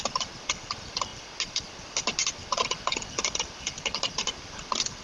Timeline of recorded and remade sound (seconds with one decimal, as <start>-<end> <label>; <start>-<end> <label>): 0.0-5.0 recorded